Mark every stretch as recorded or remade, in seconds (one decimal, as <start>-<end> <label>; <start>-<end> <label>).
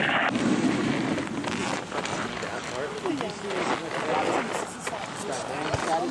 0.0-6.1 recorded